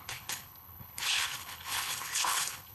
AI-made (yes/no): yes